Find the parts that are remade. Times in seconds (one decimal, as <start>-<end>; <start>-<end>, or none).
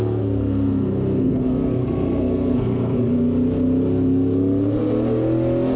0.0-3.0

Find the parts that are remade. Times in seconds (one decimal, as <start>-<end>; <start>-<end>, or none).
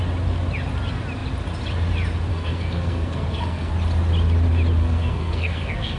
2.3-3.7; 4.8-6.0